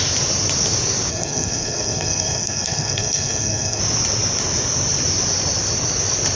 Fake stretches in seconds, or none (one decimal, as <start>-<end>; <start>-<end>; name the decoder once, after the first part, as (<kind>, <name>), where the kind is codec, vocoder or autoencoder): 1.1-3.8 (codec, SNAC)